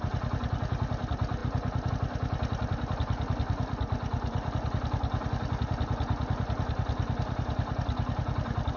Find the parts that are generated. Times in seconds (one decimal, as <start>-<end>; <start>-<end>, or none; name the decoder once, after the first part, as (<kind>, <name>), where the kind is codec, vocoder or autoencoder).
none